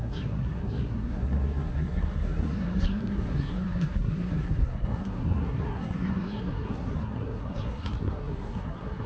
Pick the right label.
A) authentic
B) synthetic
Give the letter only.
B